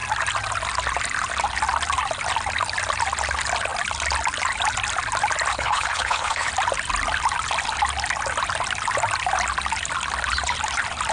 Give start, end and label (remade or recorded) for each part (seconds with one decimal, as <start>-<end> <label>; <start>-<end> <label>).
0.0-5.5 recorded; 5.5-6.5 remade; 6.5-11.1 recorded